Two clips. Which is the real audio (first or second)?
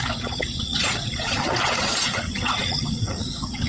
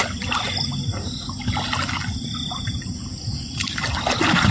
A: second